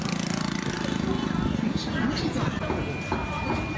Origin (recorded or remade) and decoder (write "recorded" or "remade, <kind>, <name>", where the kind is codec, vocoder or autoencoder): recorded